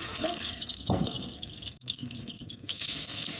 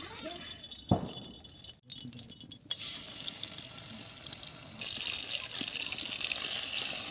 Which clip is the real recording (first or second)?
second